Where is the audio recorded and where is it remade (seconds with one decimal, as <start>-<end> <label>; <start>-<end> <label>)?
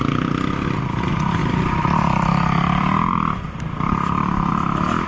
0.0-1.4 recorded; 1.4-4.5 remade; 4.5-5.1 recorded